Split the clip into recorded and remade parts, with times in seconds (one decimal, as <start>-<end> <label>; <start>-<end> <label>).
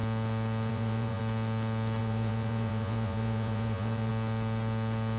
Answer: 0.0-0.7 recorded; 0.7-1.2 remade; 1.2-2.0 recorded; 2.0-4.1 remade; 4.1-5.2 recorded